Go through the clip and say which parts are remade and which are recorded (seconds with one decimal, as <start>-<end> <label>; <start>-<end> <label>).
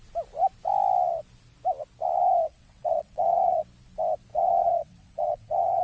0.0-2.5 recorded; 2.5-3.6 remade; 3.6-4.3 recorded; 4.3-5.8 remade